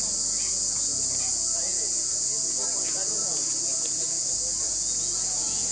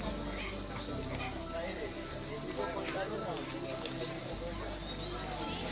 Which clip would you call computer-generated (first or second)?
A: first